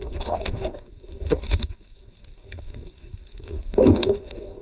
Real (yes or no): no